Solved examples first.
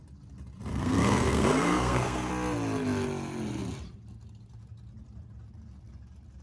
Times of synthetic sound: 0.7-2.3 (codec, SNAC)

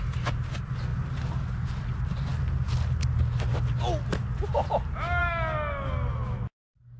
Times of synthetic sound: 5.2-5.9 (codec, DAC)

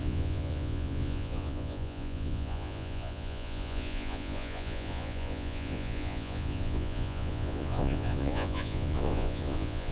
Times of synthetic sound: 0.0-9.9 (vocoder, Vocos)

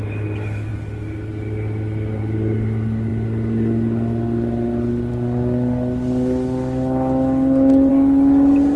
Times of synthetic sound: none

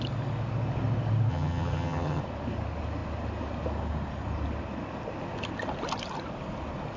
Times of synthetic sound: 1.3-2.2 (vocoder, HiFi-GAN)

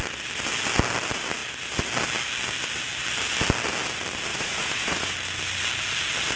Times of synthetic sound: 4.3-5.1 (vocoder, Vocos)

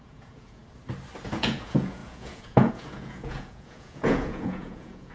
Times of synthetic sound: 0.0-0.6 (vocoder, Vocos); 1.2-5.1